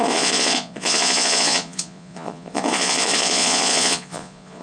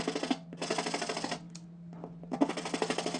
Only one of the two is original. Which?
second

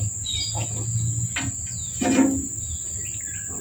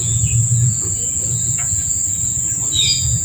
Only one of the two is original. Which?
first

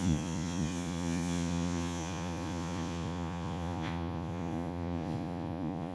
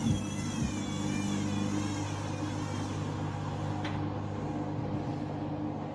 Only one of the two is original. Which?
second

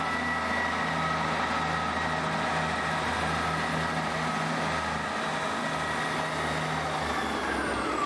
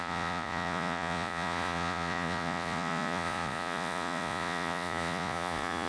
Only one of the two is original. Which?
first